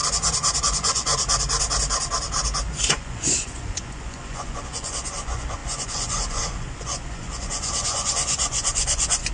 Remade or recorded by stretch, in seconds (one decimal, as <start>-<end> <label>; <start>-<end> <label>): 0.0-0.6 recorded; 0.6-1.1 remade; 1.1-2.9 recorded; 2.9-9.3 remade